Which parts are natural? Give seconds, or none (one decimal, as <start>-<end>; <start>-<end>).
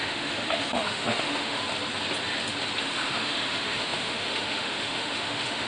1.6-2.8